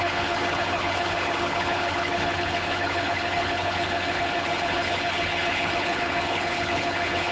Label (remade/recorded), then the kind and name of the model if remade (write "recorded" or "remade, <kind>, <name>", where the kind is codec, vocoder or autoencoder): remade, codec, HILCodec